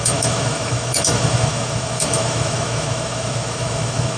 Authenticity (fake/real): fake